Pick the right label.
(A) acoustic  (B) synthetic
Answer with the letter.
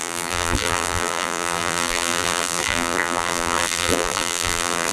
B